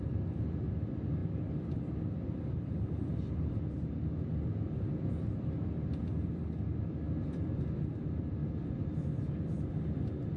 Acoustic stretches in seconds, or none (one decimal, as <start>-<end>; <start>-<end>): 8.4-9.2